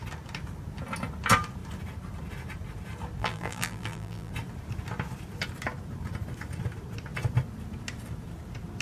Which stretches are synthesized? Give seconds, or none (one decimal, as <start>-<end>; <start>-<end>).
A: 3.2-4.3